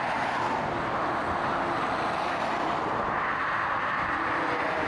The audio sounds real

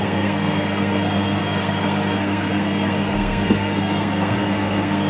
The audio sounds fake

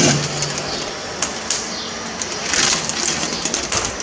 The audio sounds real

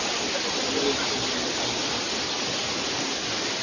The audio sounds real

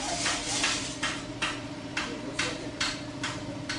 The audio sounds fake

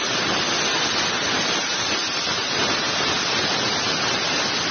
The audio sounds real